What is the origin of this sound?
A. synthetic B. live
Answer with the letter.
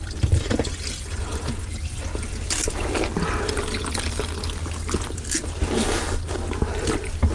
B